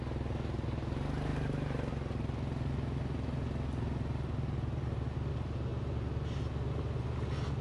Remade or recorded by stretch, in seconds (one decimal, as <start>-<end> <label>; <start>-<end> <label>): 0.0-7.6 recorded